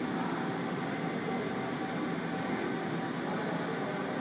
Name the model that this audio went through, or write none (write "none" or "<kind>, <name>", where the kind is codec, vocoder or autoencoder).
none